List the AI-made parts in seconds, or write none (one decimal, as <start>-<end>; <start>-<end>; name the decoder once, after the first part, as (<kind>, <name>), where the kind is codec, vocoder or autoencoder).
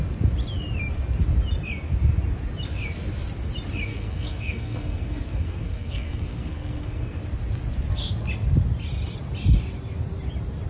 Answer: 3.9-7.2 (codec, SNAC)